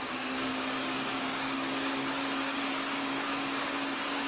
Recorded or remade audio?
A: remade